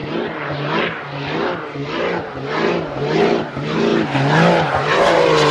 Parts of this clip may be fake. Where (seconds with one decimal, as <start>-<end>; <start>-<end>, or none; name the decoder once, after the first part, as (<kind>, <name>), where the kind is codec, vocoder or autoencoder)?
0.0-3.9 (vocoder, BigVGAN v2); 4.5-5.5